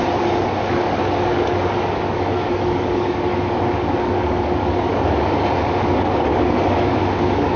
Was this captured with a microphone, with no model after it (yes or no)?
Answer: no